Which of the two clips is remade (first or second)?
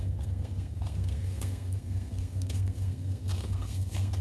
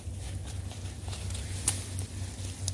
first